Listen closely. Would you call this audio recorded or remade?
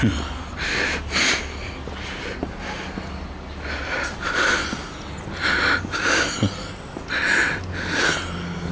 recorded